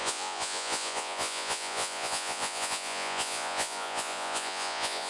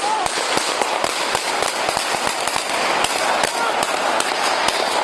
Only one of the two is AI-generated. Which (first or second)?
first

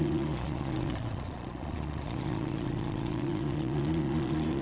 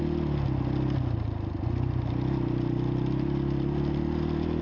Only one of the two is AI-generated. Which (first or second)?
first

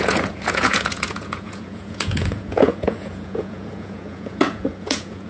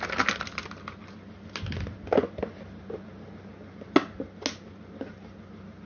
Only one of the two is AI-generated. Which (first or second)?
first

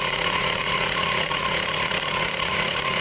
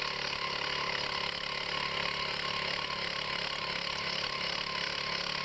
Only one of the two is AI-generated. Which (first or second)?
first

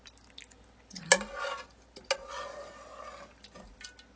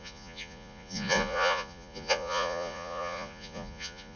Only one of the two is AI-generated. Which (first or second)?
second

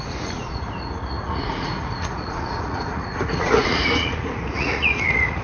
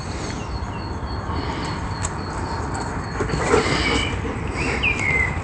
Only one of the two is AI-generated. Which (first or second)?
first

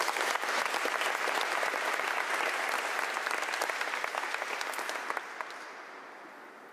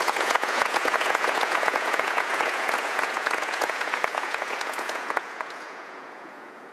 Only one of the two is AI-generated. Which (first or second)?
second